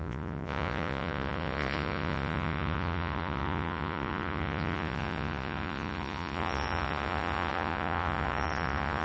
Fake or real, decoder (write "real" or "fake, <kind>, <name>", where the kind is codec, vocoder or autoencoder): fake, vocoder, Vocos